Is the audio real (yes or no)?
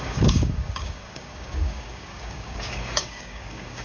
no